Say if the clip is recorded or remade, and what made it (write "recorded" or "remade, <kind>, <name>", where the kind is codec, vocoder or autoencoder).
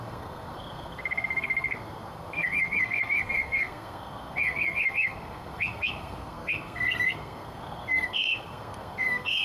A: remade, codec, SNAC